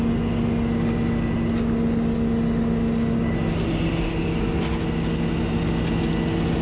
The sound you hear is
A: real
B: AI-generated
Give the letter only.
A